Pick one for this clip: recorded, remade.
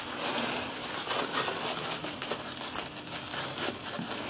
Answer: recorded